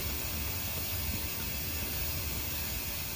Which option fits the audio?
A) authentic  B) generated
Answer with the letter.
A